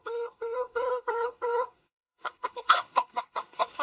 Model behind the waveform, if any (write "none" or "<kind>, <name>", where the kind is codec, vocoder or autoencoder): codec, SNAC